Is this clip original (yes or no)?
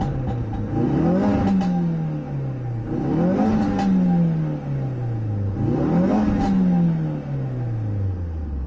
yes